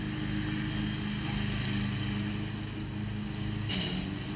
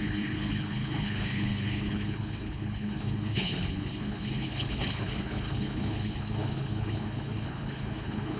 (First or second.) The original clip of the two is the first